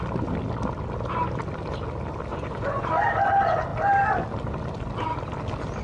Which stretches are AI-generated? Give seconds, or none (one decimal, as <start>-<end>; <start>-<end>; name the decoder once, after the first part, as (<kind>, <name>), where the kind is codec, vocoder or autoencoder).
2.3-2.9 (vocoder, Vocos)